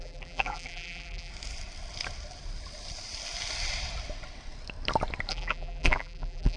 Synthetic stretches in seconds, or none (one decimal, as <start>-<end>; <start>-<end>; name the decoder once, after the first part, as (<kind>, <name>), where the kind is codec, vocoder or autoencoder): 0.0-1.3 (vocoder, BigVGAN v2); 5.3-6.6